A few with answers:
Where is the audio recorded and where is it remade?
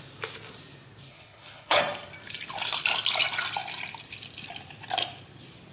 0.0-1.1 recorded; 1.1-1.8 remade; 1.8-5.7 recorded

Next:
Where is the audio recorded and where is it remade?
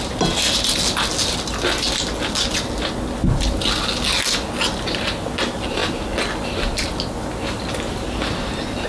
0.0-8.9 recorded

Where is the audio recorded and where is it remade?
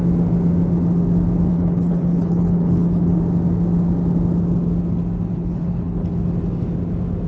0.0-1.5 recorded; 1.5-3.2 remade; 3.2-5.3 recorded; 5.3-6.1 remade; 6.1-7.3 recorded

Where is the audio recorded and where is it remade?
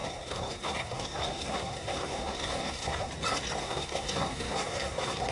0.0-3.1 remade; 3.1-3.6 recorded; 3.6-5.3 remade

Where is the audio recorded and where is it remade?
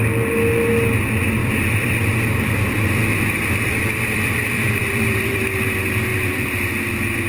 0.0-1.4 recorded; 1.4-5.4 remade; 5.4-6.1 recorded; 6.1-6.7 remade; 6.7-7.3 recorded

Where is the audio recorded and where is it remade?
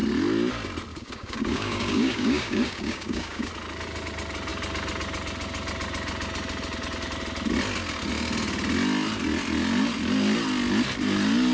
0.0-0.9 recorded; 0.9-3.5 remade; 3.5-11.5 recorded